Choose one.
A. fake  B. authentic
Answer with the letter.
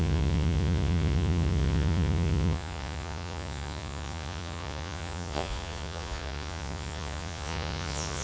A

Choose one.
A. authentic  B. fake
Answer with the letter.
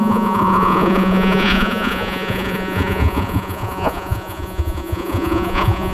B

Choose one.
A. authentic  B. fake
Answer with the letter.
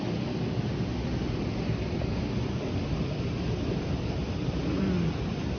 A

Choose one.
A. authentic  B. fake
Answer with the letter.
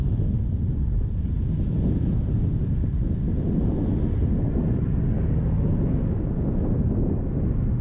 A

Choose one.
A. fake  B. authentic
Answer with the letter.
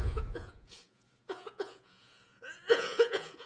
A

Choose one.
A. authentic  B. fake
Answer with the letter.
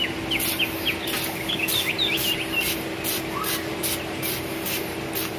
A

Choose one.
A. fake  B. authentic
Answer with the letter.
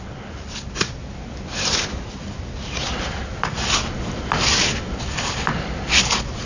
B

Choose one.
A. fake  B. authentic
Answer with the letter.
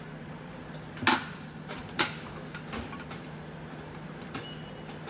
B